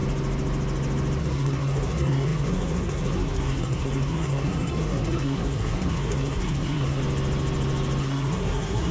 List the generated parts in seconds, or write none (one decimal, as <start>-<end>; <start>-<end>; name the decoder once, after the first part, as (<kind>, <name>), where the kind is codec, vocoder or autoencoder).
1.2-7.0 (codec, SNAC); 8.0-8.9